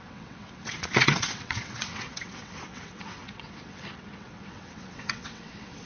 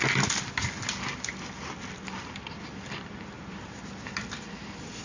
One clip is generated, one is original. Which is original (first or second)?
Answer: second